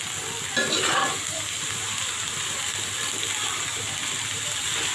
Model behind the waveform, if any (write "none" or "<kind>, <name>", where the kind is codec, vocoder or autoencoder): none